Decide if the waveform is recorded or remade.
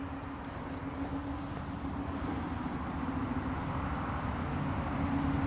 recorded